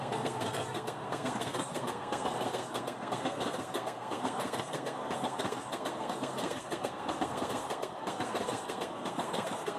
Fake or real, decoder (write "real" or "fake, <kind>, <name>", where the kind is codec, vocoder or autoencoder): fake, codec, SNAC